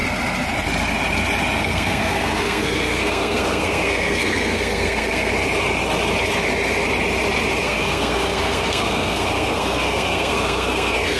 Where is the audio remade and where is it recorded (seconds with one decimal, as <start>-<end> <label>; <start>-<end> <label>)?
0.0-1.6 recorded; 1.6-5.3 remade; 5.3-7.6 recorded; 7.6-11.2 remade